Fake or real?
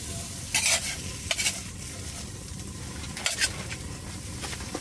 real